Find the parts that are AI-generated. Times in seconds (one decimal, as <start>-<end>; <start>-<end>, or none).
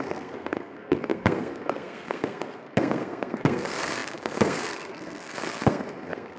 0.0-6.4